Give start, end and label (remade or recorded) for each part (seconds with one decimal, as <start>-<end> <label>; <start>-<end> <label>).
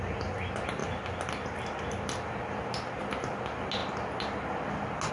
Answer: 0.0-5.1 recorded